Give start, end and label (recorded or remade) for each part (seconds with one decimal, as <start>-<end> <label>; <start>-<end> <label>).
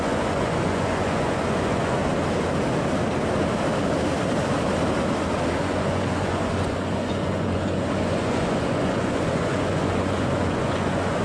0.0-2.0 remade; 2.0-5.6 recorded; 5.6-11.2 remade